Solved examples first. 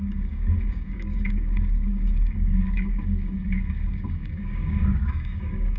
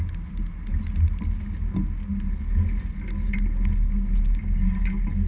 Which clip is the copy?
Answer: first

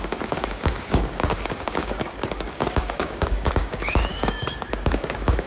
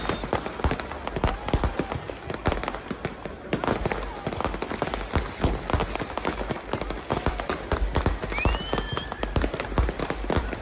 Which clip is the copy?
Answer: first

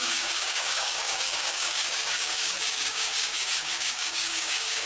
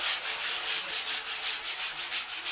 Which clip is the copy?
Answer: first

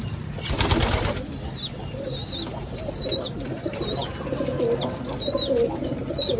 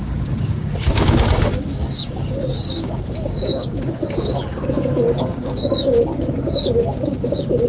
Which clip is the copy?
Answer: second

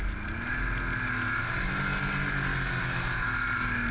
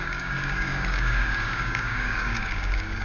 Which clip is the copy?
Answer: second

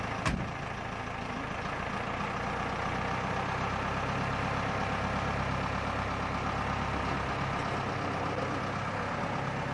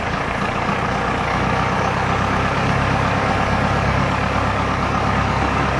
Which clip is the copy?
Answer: second